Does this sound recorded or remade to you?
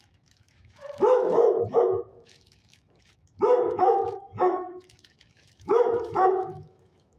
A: remade